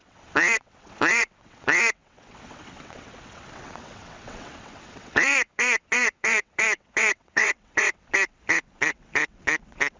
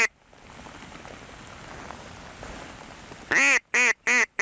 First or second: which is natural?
second